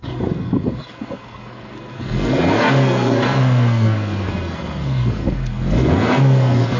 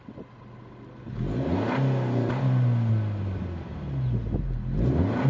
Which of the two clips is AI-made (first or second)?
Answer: first